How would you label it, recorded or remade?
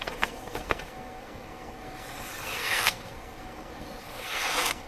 remade